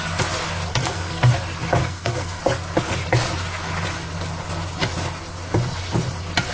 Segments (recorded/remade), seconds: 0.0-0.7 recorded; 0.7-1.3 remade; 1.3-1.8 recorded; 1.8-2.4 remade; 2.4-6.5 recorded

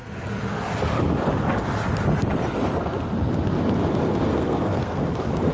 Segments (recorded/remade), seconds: 0.0-4.3 recorded; 4.3-5.0 remade; 5.0-5.5 recorded

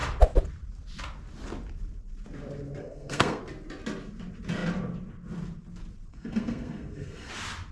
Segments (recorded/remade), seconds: 0.0-2.8 recorded; 2.8-3.4 remade; 3.4-6.1 recorded; 6.1-7.3 remade; 7.3-7.7 recorded

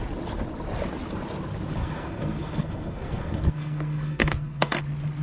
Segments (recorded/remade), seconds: 0.0-1.8 recorded; 1.8-4.8 remade; 4.8-5.2 recorded

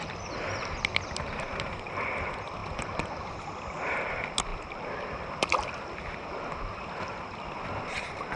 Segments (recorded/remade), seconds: 0.0-8.4 recorded

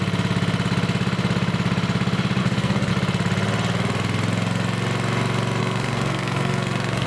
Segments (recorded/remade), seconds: 0.0-2.4 recorded; 2.4-2.9 remade; 2.9-5.6 recorded; 5.6-7.1 remade